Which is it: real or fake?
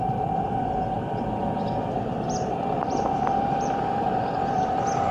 fake